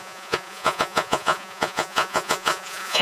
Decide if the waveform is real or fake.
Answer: fake